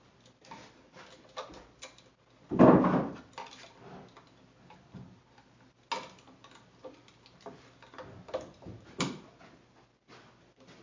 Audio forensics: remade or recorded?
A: recorded